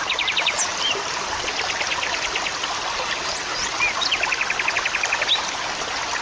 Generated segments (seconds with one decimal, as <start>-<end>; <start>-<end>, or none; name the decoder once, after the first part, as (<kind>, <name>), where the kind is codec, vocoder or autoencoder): none